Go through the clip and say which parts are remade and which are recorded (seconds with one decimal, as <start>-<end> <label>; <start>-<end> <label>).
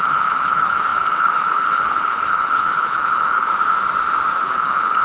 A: 0.0-3.5 remade; 3.5-4.4 recorded; 4.4-5.0 remade